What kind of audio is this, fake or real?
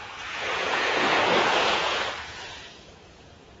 fake